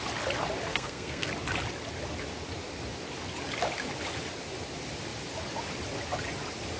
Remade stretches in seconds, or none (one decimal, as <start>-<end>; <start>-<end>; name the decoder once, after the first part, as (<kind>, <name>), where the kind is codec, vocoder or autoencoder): 0.7-1.3 (codec, SNAC)